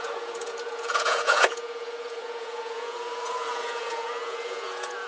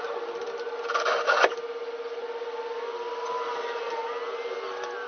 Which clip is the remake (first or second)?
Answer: first